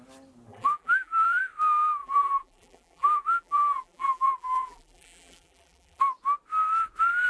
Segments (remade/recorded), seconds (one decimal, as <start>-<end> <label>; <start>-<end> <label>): 0.0-0.5 recorded; 0.5-1.4 remade; 1.4-2.0 recorded; 2.0-6.0 remade; 6.0-7.3 recorded